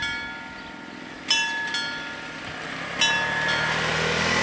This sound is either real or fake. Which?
real